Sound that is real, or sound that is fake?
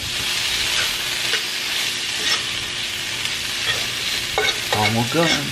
real